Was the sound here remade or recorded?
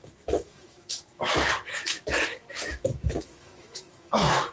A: remade